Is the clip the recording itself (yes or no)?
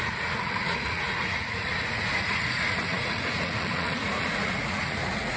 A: no